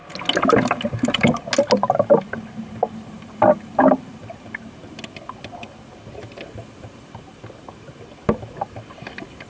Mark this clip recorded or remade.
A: recorded